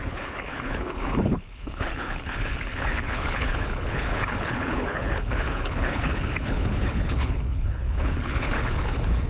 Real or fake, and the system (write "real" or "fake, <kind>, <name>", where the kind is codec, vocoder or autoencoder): fake, codec, HILCodec